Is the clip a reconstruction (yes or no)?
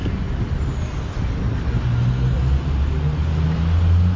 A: no